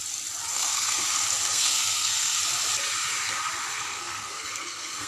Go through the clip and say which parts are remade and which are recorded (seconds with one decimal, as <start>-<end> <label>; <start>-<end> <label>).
0.0-0.5 recorded; 0.5-1.0 remade; 1.0-1.5 recorded; 1.5-2.4 remade; 2.4-3.7 recorded; 3.7-5.1 remade